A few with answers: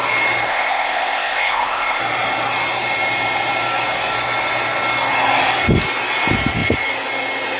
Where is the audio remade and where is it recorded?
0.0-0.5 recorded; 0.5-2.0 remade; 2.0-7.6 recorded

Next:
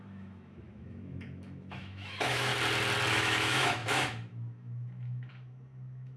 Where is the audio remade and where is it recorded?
0.0-2.5 remade; 2.5-3.1 recorded; 3.1-6.2 remade

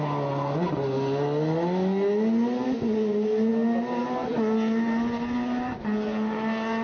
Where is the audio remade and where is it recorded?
0.0-6.8 recorded